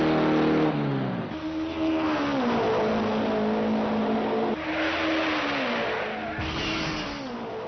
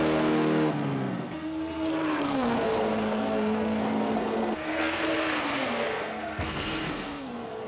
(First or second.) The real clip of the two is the first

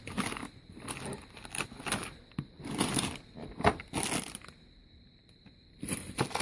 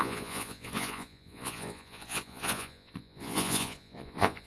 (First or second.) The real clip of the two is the first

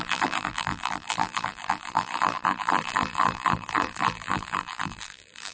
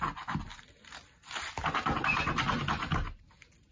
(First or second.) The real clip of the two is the second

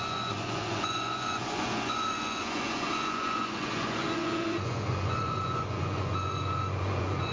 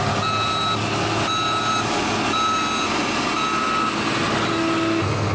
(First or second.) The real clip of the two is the second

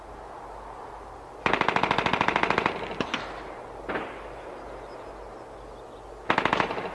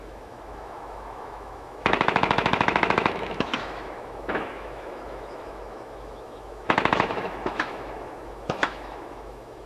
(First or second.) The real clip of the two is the first